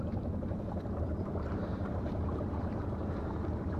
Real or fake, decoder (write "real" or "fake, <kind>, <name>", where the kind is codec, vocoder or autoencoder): fake, vocoder, BigVGAN v2